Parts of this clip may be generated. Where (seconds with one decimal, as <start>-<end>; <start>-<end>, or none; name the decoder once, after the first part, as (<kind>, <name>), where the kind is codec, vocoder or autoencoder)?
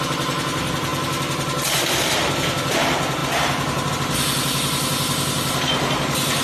none